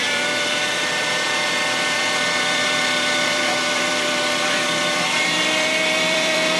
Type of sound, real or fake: fake